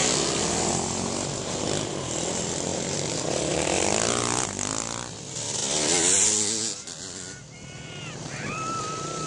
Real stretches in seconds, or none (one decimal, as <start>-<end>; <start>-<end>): 0.0-2.7; 3.5-9.3